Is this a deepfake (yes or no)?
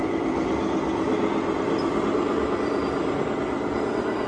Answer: no